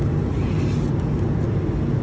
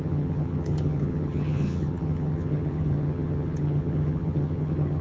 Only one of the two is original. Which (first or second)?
first